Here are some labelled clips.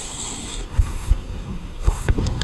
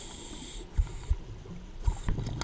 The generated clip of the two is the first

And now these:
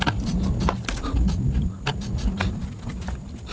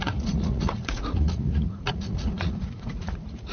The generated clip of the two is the second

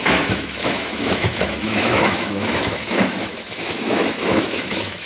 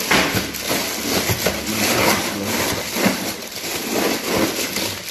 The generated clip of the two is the first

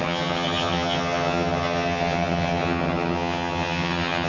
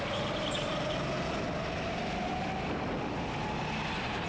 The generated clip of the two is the first